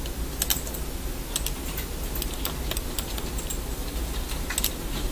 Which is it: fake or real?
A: real